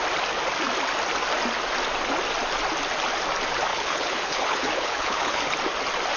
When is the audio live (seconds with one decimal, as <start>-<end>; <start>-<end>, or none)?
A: 0.0-3.7; 5.4-6.2